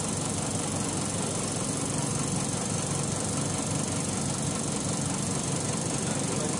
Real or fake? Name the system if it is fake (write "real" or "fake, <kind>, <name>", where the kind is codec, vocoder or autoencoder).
real